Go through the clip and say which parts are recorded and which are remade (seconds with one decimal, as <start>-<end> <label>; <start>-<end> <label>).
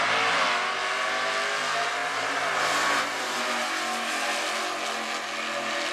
0.0-5.9 recorded